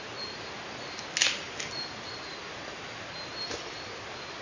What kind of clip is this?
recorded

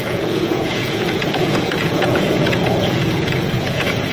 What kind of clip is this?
remade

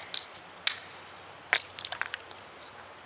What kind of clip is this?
recorded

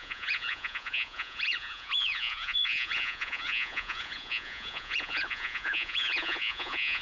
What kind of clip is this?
remade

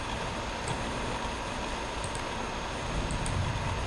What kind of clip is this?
recorded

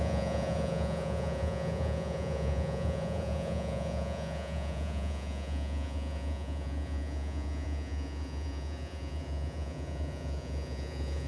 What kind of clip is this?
remade